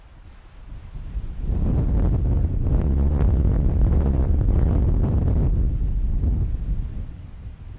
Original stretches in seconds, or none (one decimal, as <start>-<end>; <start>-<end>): 0.0-2.4; 4.8-7.8

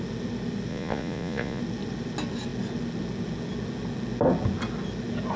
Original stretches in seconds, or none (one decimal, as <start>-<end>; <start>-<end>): 0.0-0.7; 1.6-5.4